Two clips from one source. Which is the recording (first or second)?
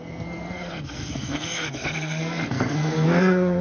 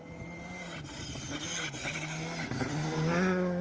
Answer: second